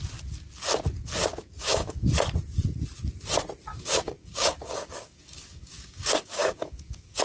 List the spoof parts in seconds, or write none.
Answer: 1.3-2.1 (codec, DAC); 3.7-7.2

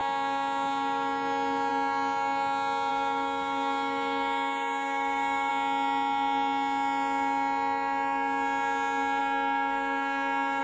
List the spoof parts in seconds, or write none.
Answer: 2.9-5.5 (codec, DAC); 9.2-10.6

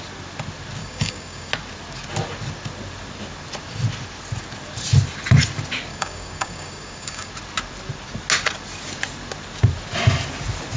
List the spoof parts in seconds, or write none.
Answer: 0.8-1.5 (codec, DAC); 5.9-7.3

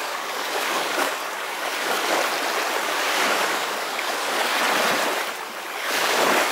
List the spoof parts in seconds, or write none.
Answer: 0.0-2.2 (codec, DAC); 2.8-4.5; 5.4-6.5

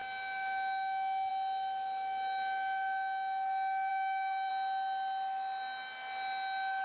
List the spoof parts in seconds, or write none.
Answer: 3.9-4.5 (codec, DAC)

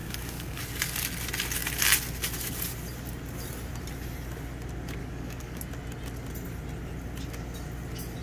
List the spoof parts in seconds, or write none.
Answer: 0.0-0.6 (codec, DAC); 5.0-5.6

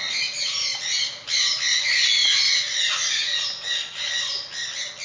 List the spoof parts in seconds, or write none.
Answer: none

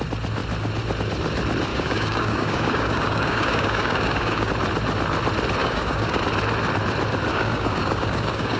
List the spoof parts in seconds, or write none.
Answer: 1.7-4.5 (codec, DAC); 5.6-6.2; 7.3-8.6